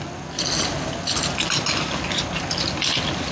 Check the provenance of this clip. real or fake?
real